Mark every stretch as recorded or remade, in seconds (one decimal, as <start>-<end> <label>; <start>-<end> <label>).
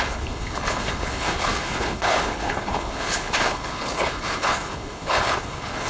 0.0-5.9 remade